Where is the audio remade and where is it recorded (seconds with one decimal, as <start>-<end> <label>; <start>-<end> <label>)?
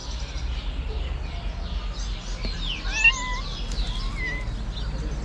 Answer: 0.0-5.2 recorded